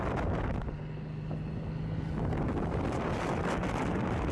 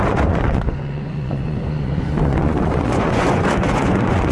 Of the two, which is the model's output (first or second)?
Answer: second